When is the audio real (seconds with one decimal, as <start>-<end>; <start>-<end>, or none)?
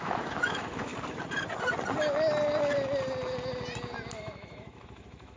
0.9-4.1